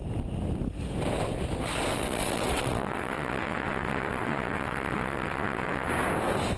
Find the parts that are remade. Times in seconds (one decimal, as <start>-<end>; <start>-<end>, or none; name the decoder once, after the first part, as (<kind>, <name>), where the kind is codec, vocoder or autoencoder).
1.9-5.9 (vocoder, WaveNeXt)